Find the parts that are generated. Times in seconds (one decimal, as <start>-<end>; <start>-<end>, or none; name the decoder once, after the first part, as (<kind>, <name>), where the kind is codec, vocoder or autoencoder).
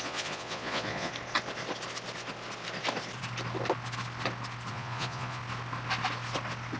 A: 0.0-1.1 (vocoder, Vocos); 4.7-5.4